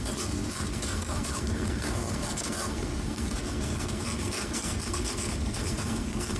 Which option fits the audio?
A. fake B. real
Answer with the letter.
A